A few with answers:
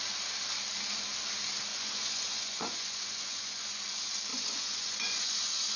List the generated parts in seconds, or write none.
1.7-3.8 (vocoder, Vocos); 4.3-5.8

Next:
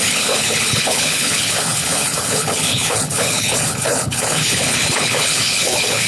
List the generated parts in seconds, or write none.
0.0-6.1 (codec, HILCodec)

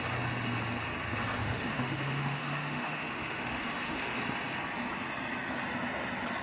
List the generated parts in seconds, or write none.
1.4-4.2 (autoencoder, DAC-VAE)

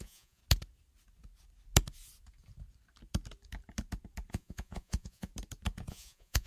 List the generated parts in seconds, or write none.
0.0-0.4 (vocoder, Vocos); 4.3-5.3; 5.9-6.5

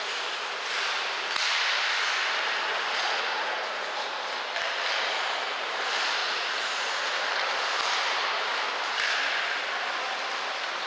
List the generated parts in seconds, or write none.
2.7-4.2 (vocoder, Vocos); 6.2-7.3

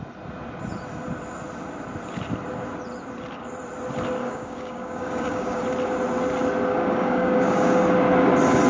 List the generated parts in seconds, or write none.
4.2-5.6 (codec, DAC); 6.7-7.8

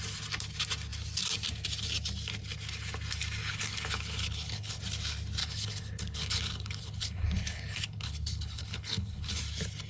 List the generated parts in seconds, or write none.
3.4-4.8 (codec, HILCodec); 5.4-9.4

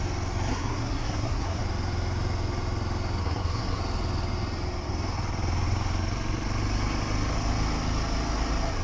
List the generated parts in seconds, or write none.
0.5-1.6 (codec, SNAC); 3.2-3.8